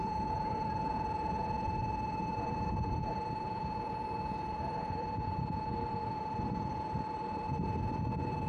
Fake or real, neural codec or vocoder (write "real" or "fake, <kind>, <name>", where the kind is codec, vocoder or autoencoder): fake, vocoder, BigVGAN v2